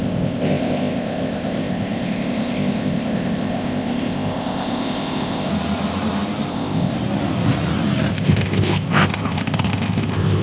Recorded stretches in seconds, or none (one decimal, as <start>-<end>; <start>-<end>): 5.5-6.5; 6.9-8.1